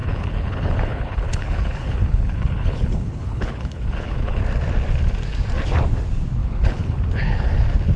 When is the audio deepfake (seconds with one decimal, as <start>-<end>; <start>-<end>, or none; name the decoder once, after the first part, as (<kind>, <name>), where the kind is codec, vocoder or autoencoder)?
0.0-4.4 (codec, HILCodec); 6.4-7.0